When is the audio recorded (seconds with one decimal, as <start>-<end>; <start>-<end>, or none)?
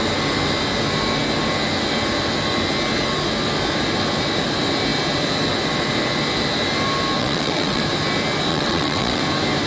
0.0-7.2; 7.8-8.5; 9.2-9.7